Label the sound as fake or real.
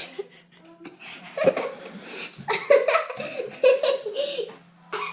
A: real